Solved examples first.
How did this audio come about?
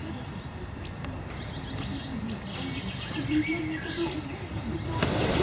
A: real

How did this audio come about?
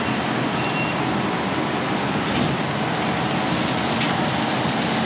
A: real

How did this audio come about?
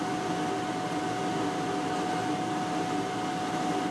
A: real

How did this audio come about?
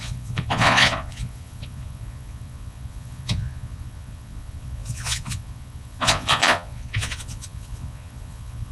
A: fake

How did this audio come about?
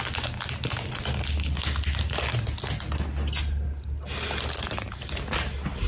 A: real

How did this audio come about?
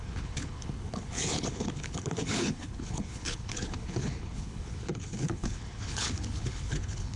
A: fake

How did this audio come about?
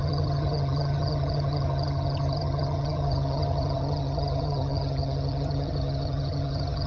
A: fake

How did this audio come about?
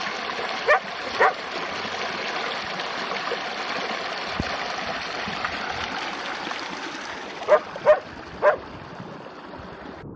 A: real